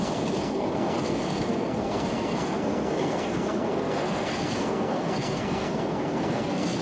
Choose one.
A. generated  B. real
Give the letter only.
A